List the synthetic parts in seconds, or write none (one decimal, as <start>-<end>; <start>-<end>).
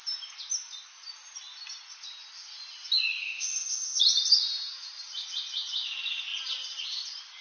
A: 3.2-4.0